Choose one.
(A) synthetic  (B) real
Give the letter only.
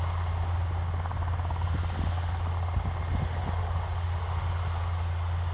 B